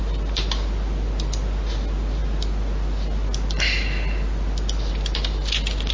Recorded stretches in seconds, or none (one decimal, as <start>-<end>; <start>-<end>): 0.0-5.9